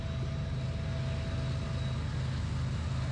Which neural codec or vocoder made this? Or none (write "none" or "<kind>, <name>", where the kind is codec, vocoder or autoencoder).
none